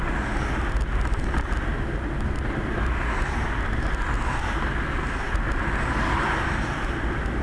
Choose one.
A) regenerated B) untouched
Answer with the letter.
B